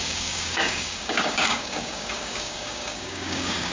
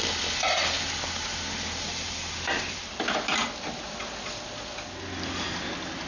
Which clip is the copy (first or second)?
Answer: first